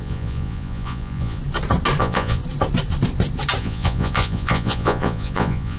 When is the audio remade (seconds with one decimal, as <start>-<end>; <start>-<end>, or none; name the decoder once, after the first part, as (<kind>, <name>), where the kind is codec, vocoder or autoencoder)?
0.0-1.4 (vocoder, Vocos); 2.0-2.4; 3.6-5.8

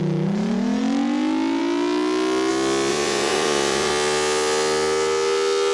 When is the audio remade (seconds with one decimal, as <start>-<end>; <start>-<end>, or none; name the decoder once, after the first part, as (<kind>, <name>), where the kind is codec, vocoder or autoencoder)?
2.9-3.9 (vocoder, Vocos)

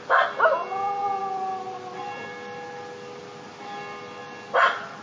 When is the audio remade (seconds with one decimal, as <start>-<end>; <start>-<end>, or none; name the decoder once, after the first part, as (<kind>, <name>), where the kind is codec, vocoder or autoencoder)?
none